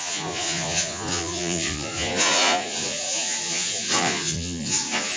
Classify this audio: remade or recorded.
remade